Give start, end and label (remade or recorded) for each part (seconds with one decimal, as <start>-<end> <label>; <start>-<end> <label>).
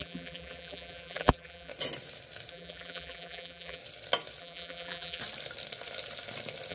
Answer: 0.0-1.7 remade; 1.7-2.5 recorded; 2.5-3.8 remade; 3.8-4.4 recorded; 4.4-5.2 remade; 5.2-6.7 recorded